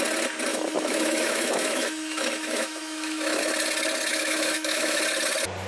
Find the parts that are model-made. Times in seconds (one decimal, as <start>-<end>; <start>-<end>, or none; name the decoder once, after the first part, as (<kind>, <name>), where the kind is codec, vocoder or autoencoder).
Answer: 0.5-3.4 (autoencoder, DAC-VAE); 4.1-5.0